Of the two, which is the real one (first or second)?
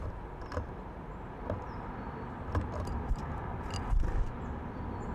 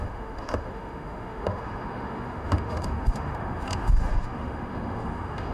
first